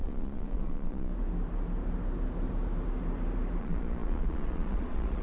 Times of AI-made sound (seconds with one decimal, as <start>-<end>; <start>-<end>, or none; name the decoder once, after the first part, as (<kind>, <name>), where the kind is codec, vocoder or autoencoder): 0.0-1.1 (vocoder, Vocos); 3.6-5.2